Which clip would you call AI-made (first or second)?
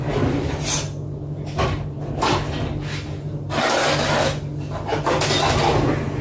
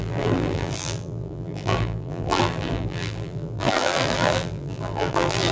second